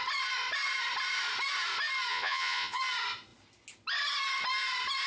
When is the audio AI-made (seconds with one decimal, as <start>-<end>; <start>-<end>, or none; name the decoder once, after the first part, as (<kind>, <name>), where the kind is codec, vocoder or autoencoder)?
2.1-2.8 (vocoder, Vocos)